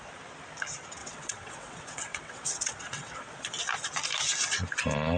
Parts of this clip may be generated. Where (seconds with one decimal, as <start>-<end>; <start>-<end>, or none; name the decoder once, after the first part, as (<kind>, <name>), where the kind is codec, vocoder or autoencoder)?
1.0-3.6 (vocoder, WaveNeXt)